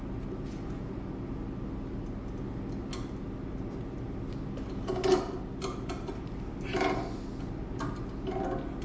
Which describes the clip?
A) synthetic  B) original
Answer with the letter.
B